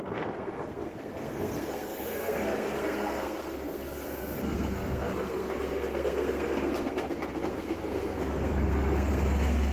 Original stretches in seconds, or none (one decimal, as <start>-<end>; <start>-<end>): none